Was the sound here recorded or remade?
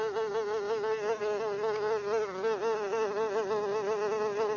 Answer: recorded